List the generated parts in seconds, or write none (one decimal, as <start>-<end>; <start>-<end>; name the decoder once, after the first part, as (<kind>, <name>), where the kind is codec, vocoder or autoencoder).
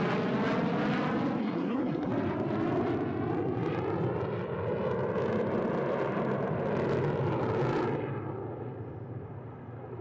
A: 1.4-2.1 (codec, SNAC)